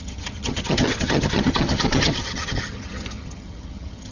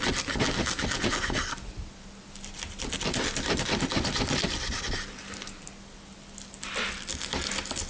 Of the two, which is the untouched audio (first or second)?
second